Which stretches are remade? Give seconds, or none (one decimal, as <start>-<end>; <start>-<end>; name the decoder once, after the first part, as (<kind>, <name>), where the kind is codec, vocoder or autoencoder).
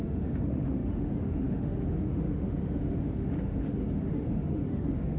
0.0-5.2 (autoencoder, DAC-VAE)